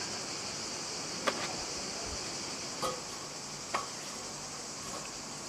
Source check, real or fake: real